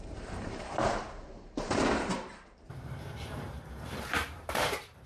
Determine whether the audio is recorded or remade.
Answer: remade